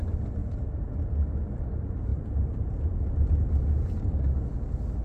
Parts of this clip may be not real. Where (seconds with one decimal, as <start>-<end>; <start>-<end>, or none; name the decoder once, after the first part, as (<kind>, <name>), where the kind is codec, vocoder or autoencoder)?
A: 0.4-0.9 (vocoder, BigVGAN v2); 2.1-3.5